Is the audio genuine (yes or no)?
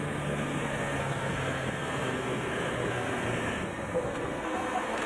no